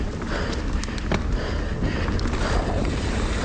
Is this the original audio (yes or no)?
yes